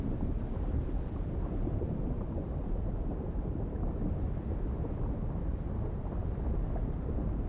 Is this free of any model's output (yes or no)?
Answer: yes